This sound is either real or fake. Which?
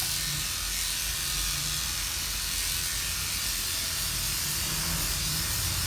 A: real